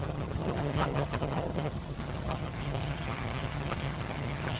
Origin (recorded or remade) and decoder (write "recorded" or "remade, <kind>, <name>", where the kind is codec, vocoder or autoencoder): remade, vocoder, HiFi-GAN